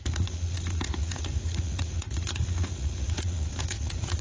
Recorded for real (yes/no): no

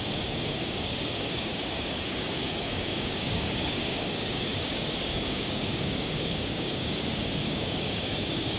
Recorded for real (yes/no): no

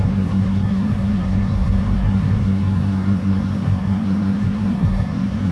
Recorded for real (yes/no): no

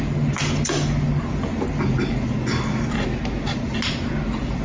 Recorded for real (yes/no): yes